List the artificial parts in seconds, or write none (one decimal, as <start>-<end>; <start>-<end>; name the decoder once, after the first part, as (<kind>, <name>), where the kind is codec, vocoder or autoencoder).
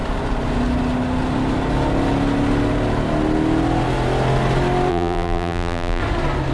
4.9-6.0 (vocoder, BigVGAN v2)